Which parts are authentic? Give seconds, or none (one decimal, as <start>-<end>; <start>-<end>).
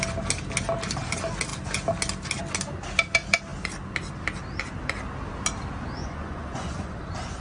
0.0-6.0; 7.0-7.4